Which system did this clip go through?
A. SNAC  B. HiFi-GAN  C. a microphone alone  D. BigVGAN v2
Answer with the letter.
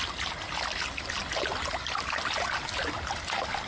C